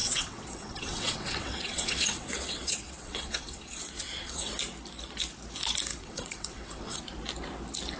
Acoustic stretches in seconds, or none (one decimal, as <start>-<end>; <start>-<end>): 4.5-5.9; 7.0-8.0